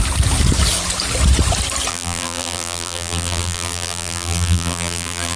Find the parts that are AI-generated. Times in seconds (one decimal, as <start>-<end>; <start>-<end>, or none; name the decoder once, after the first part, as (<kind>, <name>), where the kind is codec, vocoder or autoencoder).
1.9-5.4 (vocoder, BigVGAN v2)